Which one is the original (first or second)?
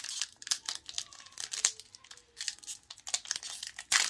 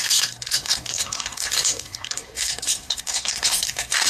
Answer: first